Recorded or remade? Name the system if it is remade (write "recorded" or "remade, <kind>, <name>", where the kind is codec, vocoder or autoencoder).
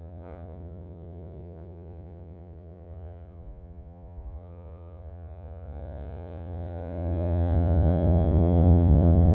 remade, vocoder, Vocos